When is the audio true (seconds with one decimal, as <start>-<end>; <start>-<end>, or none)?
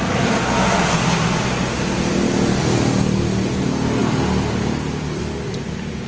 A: 0.0-6.1